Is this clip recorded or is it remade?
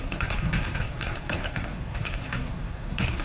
remade